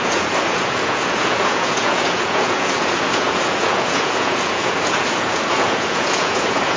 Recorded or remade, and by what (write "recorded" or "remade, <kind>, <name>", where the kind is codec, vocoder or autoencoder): remade, vocoder, Vocos